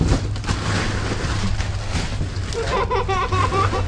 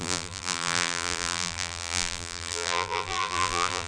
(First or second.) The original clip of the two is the first